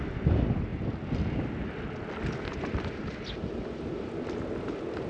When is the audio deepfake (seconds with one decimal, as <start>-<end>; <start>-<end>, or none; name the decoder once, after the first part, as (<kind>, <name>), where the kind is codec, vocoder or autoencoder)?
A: none